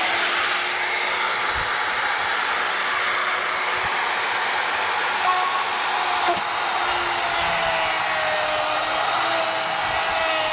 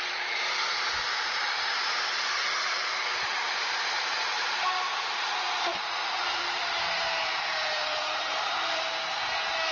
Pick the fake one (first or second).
second